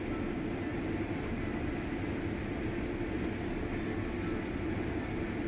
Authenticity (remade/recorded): recorded